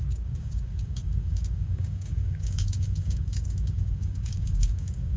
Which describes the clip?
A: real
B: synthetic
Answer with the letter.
B